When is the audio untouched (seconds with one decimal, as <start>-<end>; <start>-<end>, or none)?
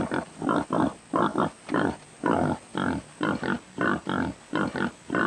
0.0-5.3